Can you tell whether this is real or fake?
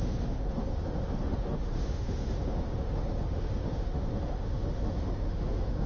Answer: fake